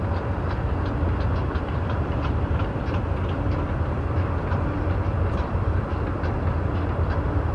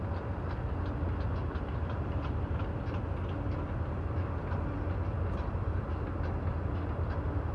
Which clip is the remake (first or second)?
first